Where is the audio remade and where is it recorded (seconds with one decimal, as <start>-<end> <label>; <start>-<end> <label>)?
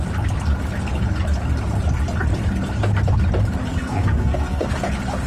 0.0-3.7 recorded; 3.7-4.7 remade; 4.7-5.3 recorded